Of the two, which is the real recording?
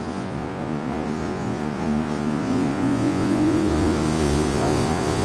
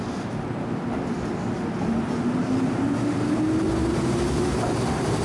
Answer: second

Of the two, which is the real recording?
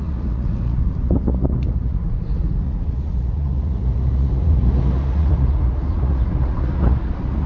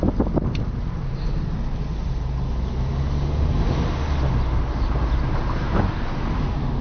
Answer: second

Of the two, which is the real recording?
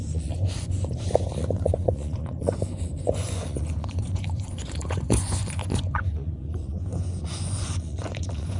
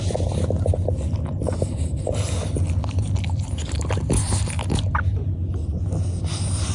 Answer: second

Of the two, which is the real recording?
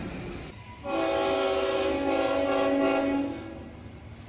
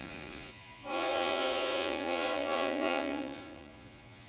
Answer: first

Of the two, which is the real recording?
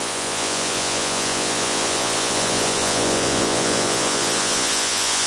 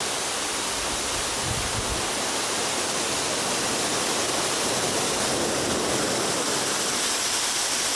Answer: second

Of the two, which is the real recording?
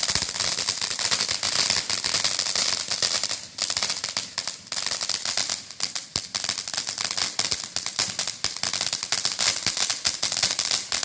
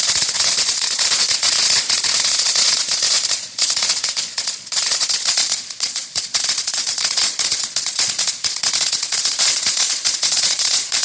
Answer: first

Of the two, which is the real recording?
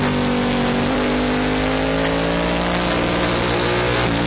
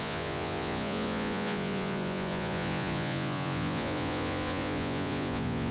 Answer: first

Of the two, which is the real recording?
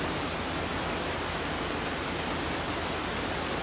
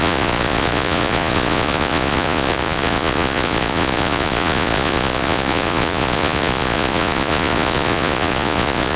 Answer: first